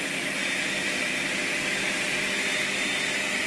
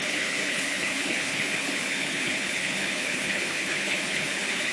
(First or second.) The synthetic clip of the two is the second